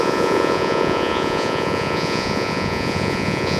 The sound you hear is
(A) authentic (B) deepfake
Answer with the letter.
B